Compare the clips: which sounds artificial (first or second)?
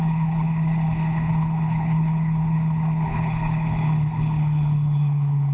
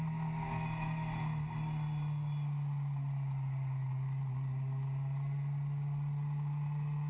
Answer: first